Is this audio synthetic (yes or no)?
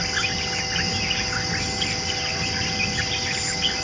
yes